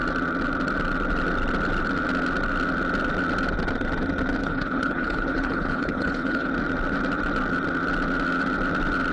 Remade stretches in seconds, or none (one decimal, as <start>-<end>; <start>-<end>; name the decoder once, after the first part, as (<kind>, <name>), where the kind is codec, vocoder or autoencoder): 4.4-6.5 (codec, HILCodec)